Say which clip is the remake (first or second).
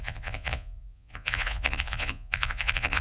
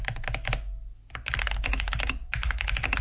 first